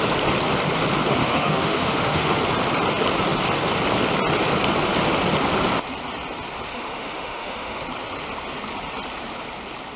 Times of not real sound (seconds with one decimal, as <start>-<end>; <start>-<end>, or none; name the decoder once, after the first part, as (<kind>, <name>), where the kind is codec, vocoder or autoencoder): 1.2-2.4 (autoencoder, DAC-VAE); 6.7-7.8